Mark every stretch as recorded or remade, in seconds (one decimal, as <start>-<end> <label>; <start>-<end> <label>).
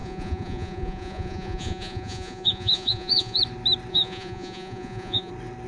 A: 0.0-3.4 remade; 3.4-3.9 recorded; 3.9-5.3 remade; 5.3-5.7 recorded